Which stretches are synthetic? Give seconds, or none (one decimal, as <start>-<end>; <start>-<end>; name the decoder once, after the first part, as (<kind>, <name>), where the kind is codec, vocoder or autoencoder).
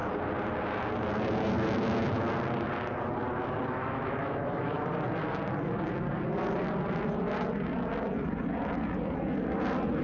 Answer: 3.8-4.9 (autoencoder, DAC-VAE)